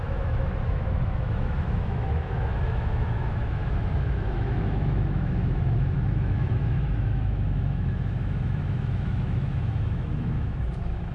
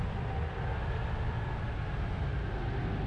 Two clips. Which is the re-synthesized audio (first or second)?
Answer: first